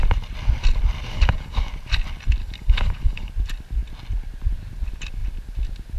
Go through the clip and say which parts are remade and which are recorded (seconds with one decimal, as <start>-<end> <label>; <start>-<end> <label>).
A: 0.0-1.1 recorded; 1.1-1.7 remade; 1.7-2.4 recorded; 2.4-3.3 remade; 3.3-6.0 recorded